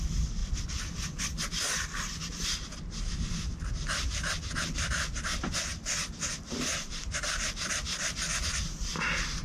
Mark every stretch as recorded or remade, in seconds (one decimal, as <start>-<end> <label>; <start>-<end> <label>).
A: 0.0-9.4 recorded

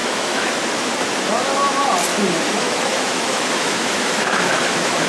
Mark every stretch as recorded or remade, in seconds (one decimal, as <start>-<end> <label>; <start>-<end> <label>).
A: 0.0-0.9 remade; 0.9-2.1 recorded; 2.1-5.1 remade

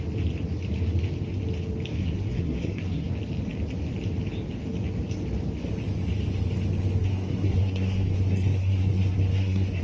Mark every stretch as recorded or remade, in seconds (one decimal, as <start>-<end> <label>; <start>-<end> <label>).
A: 0.0-1.9 recorded; 1.9-3.1 remade; 3.1-7.0 recorded; 7.0-9.8 remade

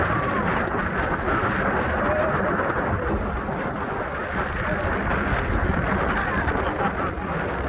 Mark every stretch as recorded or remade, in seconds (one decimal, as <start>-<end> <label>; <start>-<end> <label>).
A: 0.0-0.6 remade; 0.6-7.7 recorded

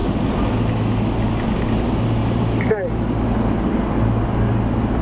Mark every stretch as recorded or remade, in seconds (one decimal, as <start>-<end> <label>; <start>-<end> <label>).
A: 0.0-5.0 recorded

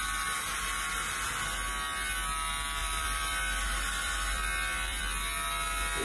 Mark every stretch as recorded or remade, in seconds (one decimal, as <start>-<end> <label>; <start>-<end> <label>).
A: 0.0-2.8 recorded; 2.8-5.0 remade; 5.0-6.0 recorded

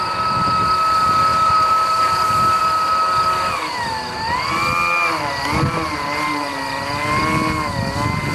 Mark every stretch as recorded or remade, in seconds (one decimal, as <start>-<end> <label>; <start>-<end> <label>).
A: 0.0-1.3 recorded; 1.3-2.6 remade; 2.6-8.3 recorded